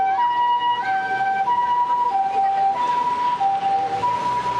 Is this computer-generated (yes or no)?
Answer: no